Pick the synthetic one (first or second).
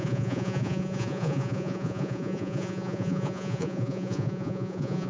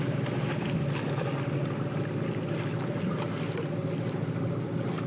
first